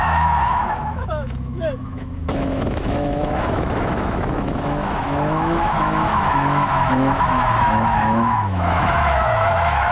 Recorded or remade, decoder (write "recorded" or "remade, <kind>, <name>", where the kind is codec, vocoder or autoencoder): remade, autoencoder, DAC-VAE